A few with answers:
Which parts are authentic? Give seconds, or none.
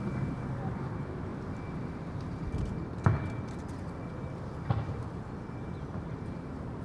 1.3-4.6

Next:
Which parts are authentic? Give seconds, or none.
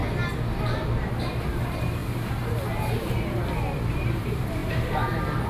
0.0-1.3; 2.0-3.9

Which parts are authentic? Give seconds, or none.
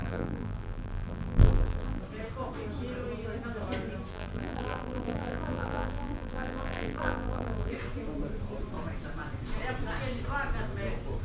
2.0-4.1; 7.7-11.2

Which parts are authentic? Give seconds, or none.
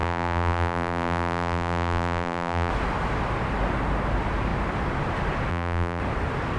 2.7-5.5; 6.0-6.6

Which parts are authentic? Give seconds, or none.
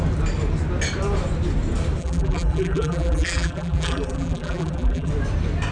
0.0-2.0; 5.1-5.7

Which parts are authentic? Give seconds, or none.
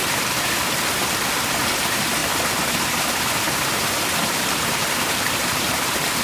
2.2-2.9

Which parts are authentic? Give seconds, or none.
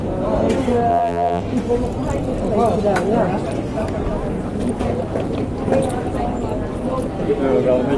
0.0-0.9; 1.4-8.0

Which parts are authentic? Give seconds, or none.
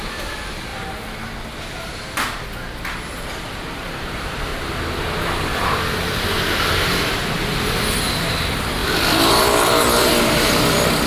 0.7-2.8; 4.5-5.0